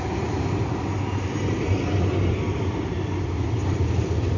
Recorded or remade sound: recorded